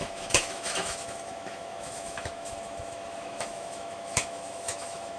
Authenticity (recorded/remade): remade